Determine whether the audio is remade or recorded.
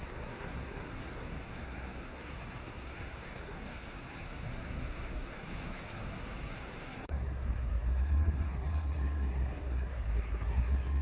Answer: remade